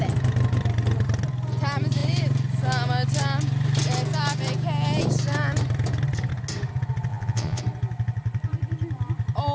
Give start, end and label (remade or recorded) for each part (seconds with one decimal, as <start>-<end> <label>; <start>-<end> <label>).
0.0-7.1 recorded; 7.1-7.6 remade; 7.6-9.5 recorded